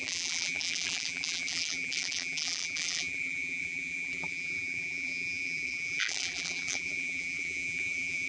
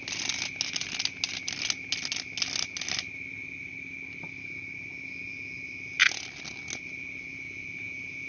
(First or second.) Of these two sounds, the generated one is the first